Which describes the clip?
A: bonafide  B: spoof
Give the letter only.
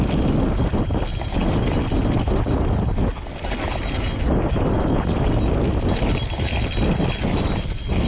A